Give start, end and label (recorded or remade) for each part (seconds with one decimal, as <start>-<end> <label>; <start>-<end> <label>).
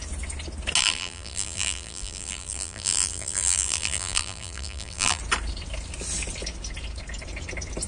0.0-0.8 recorded; 0.8-5.2 remade; 5.2-7.9 recorded